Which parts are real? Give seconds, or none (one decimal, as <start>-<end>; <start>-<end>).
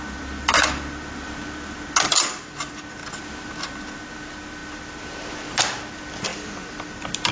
0.0-7.3